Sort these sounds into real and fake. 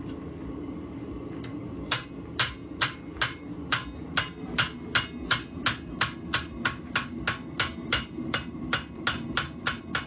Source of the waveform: real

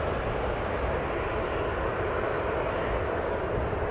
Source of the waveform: real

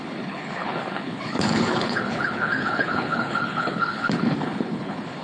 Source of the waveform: fake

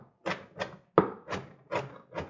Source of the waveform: real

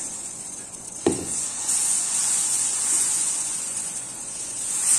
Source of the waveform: fake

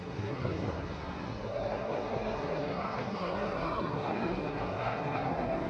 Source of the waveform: fake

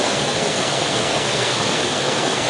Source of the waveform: fake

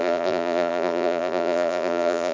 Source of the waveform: fake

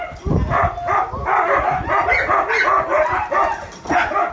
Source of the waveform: real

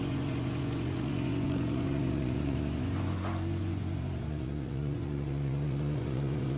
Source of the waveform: fake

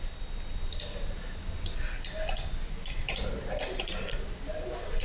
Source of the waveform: real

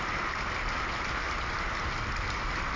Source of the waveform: real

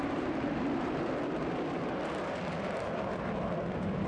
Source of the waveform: fake